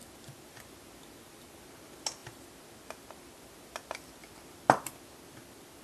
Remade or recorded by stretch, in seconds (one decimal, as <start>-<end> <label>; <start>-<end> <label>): 0.0-4.2 recorded; 4.2-4.9 remade; 4.9-5.8 recorded